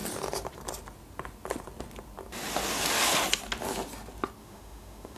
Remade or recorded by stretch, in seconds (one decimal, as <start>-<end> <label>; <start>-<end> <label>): 0.0-4.4 recorded; 4.4-5.2 remade